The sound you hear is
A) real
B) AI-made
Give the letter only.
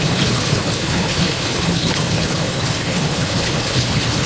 B